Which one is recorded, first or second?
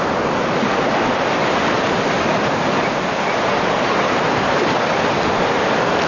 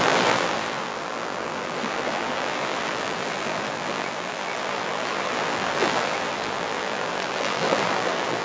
first